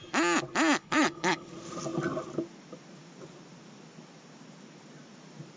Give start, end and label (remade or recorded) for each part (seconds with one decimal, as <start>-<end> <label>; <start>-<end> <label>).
0.0-0.8 recorded; 0.8-1.5 remade; 1.5-5.6 recorded